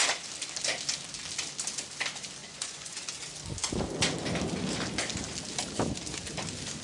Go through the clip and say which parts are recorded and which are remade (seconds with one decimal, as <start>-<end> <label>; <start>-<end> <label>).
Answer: 0.0-2.4 recorded; 2.4-3.1 remade; 3.1-6.8 recorded